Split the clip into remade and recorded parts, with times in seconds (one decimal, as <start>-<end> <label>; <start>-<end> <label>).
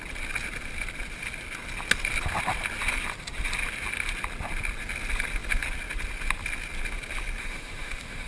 0.0-7.4 recorded; 7.4-8.3 remade